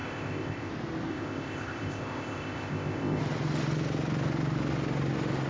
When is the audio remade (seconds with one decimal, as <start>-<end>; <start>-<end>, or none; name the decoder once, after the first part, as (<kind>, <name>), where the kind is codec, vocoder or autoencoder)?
0.0-0.7 (codec, ZipCodec); 1.1-3.2